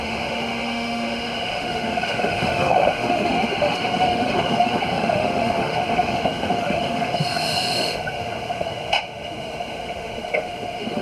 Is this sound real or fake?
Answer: fake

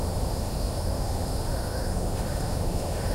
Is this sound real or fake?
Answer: fake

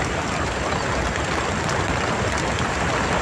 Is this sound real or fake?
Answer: real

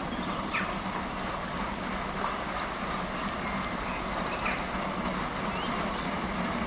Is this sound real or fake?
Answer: real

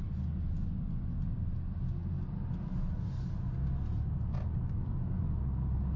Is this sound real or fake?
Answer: real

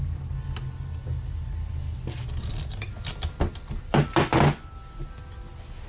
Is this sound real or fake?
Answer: real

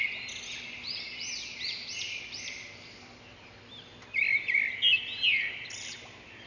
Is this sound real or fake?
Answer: real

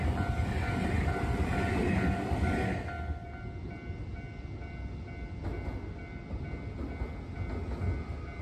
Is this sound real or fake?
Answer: real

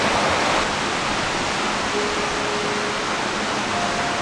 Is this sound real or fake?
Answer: real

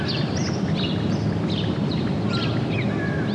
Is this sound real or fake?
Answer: real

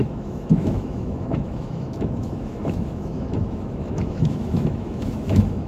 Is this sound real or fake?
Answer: fake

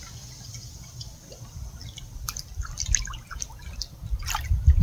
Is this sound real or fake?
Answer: real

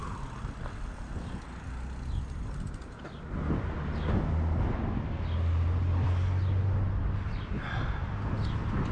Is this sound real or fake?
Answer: real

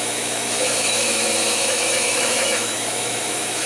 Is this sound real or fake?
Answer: fake